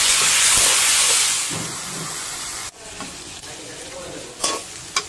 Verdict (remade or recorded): remade